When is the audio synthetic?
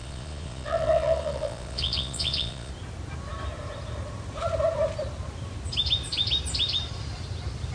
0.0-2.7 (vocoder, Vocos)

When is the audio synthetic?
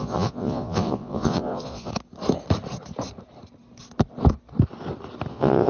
0.0-1.9 (vocoder, Vocos); 5.3-5.7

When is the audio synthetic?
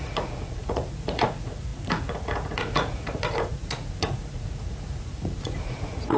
0.0-6.2 (vocoder, Vocos)